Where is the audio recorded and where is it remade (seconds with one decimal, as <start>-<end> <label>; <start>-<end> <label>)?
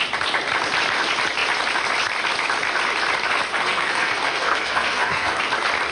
0.0-3.5 recorded; 3.5-5.4 remade; 5.4-5.9 recorded